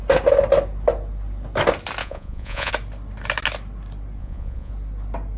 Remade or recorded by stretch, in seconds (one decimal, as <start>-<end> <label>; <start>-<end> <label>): 0.0-2.0 recorded; 2.0-2.7 remade; 2.7-4.2 recorded; 4.2-4.7 remade; 4.7-5.4 recorded